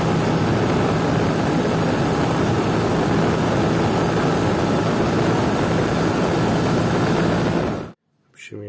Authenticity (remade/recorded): recorded